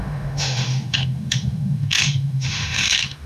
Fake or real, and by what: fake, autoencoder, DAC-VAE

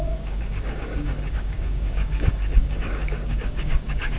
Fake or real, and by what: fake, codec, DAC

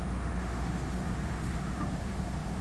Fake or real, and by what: fake, autoencoder, DAC-VAE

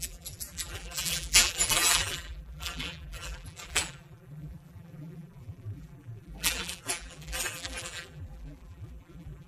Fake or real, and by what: fake, vocoder, BigVGAN v2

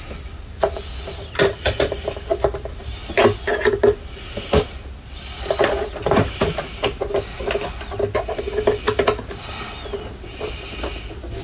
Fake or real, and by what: real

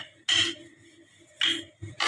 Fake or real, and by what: real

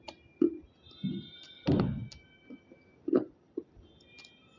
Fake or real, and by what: real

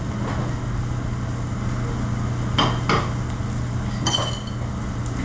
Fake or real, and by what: real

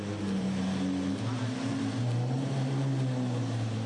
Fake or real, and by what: real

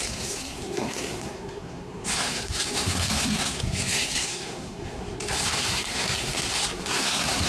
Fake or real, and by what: fake, codec, SNAC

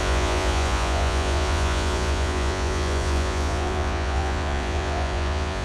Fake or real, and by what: fake, vocoder, Vocos